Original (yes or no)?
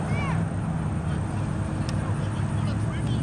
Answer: yes